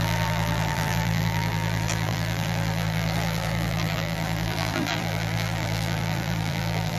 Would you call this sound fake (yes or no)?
yes